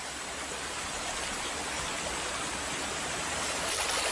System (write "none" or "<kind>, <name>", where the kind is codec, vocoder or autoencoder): none